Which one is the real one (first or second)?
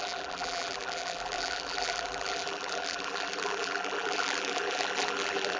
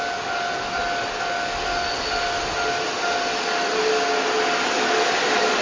second